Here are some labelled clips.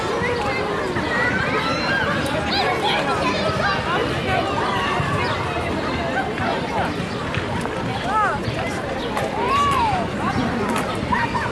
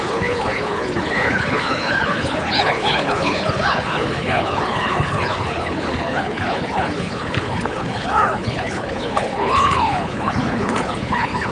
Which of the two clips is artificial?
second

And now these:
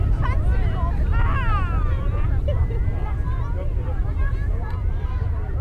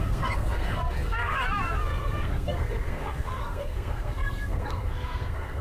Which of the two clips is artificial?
second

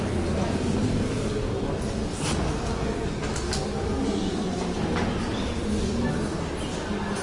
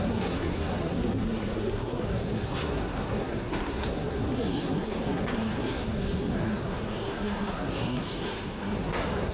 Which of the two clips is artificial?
second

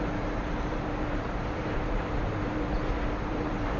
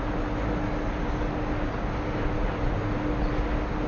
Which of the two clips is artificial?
first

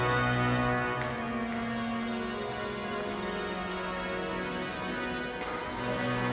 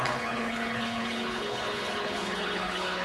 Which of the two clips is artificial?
second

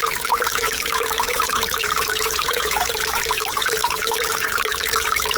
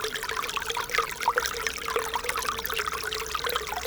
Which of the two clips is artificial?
first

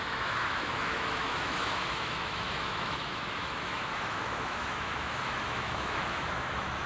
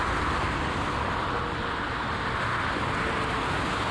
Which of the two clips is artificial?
first